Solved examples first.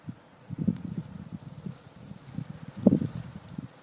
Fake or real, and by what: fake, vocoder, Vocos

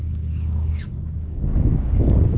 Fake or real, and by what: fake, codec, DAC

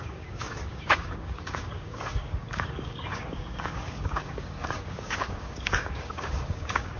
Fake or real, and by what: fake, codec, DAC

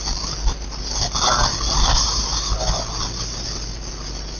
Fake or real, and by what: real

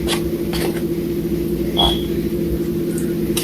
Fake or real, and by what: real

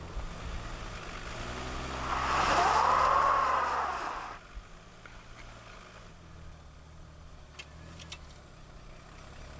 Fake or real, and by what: real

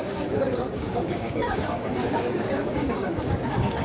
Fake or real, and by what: fake, codec, DAC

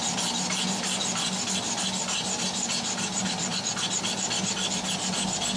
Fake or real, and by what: real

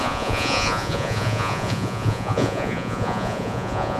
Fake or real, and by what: fake, vocoder, Vocos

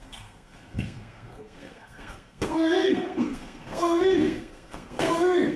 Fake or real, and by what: fake, codec, SNAC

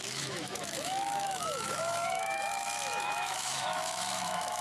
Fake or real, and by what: fake, autoencoder, DAC-VAE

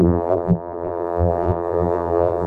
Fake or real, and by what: fake, vocoder, BigVGAN v2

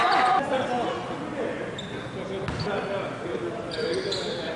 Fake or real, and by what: real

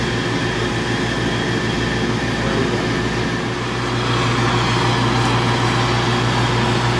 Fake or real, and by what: real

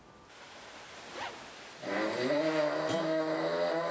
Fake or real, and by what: real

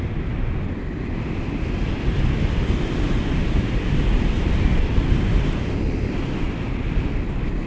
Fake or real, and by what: real